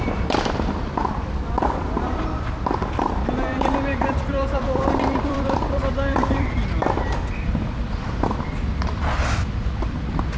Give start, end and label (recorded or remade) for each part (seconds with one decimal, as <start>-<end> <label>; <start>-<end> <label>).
0.0-10.4 remade